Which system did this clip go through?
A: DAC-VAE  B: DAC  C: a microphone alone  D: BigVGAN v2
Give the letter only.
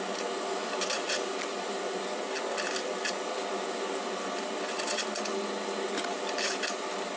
C